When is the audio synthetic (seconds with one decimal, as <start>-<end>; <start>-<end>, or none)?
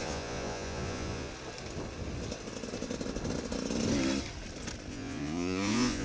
0.0-1.3; 4.9-6.0